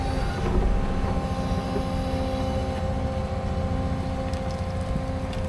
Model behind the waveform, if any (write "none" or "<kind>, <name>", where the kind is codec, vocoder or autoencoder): none